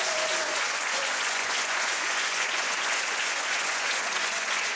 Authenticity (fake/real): fake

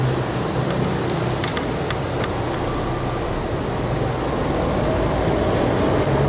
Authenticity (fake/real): real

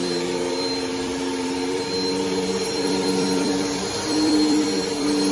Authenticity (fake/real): fake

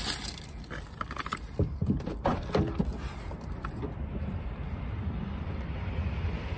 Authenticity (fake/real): fake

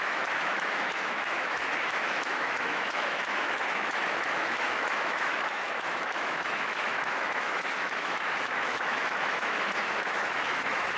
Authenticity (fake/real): fake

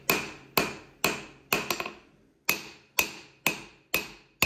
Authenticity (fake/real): real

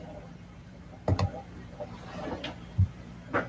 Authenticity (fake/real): fake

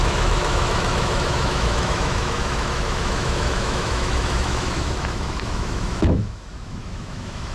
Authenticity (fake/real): fake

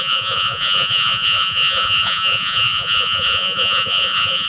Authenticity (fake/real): fake